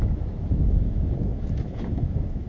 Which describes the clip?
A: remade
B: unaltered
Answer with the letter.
A